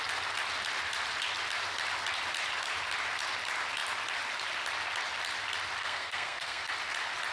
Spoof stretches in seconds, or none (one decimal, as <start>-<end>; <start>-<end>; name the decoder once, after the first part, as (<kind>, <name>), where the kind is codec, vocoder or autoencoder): 5.8-6.7 (codec, SNAC)